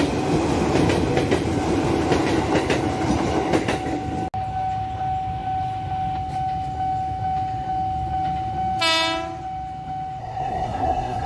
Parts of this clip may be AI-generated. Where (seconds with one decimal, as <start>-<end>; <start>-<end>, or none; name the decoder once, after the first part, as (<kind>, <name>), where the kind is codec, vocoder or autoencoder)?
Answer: 10.2-11.3 (codec, SNAC)